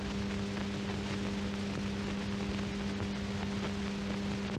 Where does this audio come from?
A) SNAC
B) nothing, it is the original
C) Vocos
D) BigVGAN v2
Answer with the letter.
B